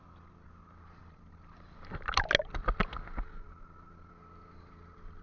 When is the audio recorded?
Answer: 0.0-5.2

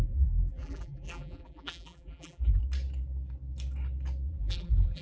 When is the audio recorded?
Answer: 2.6-4.4

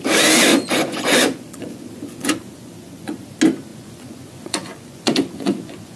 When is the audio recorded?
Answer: 0.0-0.5; 3.2-3.7